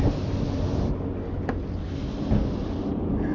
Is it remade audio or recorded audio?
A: recorded